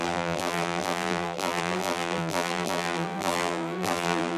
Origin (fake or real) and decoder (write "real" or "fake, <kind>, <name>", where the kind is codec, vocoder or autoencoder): fake, vocoder, BigVGAN v2